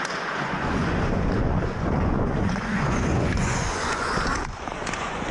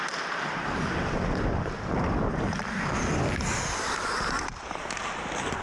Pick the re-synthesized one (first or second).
first